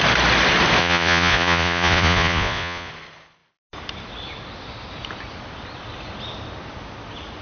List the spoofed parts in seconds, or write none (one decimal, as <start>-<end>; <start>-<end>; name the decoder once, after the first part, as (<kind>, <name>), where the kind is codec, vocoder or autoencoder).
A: 0.8-2.9 (vocoder, Vocos)